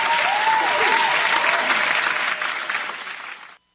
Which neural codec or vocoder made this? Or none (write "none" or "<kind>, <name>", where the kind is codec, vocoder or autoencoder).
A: none